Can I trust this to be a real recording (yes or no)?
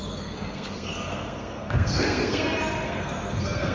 no